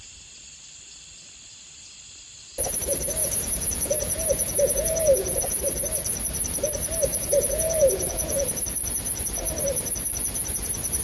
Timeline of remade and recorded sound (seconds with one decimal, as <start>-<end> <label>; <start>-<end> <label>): 0.0-3.2 recorded; 3.2-5.6 remade; 5.6-7.1 recorded; 7.1-8.5 remade; 8.5-11.0 recorded